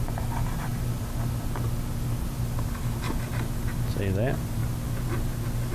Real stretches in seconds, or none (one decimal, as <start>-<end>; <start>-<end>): 0.0-5.7